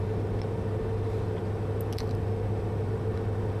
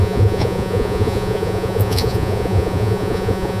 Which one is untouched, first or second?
first